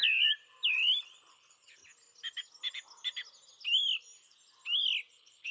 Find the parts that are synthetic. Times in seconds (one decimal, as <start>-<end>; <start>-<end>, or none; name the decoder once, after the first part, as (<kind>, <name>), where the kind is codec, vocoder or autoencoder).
1.3-1.8 (codec, HILCodec); 5.1-5.5